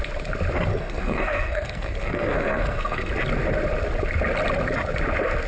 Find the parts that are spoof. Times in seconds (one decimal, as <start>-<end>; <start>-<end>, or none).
0.7-3.1